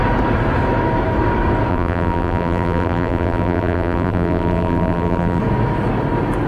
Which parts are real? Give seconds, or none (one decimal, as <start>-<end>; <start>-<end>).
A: 0.0-1.7; 5.4-6.5